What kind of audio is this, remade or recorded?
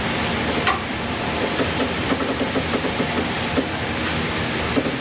recorded